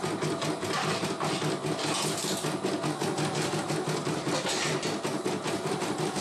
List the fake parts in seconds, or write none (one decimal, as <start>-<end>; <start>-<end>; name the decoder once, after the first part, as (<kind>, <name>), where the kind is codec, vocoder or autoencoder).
none